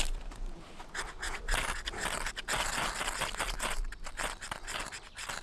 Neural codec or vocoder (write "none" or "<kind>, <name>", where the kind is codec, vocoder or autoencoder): none